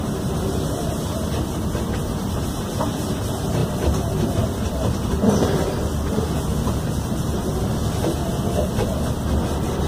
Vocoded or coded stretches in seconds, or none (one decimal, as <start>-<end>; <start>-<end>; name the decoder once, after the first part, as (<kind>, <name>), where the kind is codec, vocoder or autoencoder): 0.0-8.2 (vocoder, BigVGAN v2)